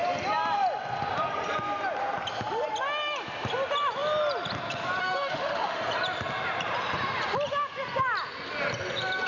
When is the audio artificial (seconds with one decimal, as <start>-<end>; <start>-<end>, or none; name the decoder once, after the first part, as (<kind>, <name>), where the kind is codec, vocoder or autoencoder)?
5.0-5.8 (autoencoder, DAC-VAE)